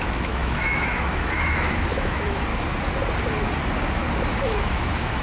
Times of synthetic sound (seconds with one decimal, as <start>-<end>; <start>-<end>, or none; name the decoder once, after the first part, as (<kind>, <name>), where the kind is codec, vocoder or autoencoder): 0.0-2.5 (autoencoder, DAC-VAE); 4.4-5.2